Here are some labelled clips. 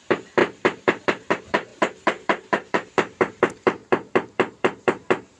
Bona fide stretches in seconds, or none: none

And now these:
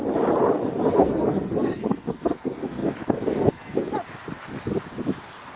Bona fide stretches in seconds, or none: 0.0-0.9; 3.9-5.6